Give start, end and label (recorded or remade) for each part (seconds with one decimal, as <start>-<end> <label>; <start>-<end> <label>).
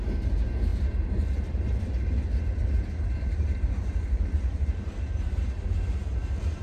0.0-6.6 remade